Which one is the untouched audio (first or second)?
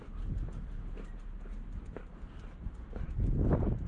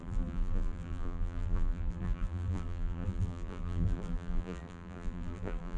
first